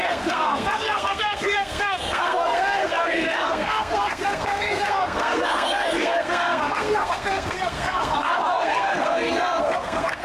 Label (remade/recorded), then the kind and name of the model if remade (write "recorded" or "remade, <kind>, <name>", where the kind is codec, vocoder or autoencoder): remade, codec, SNAC